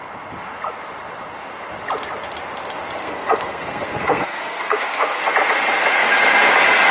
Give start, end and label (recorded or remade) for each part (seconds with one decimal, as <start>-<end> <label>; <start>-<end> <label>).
0.0-3.0 recorded; 3.0-5.2 remade; 5.2-6.9 recorded